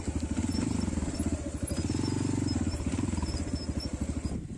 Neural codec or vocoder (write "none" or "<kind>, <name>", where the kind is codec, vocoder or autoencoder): none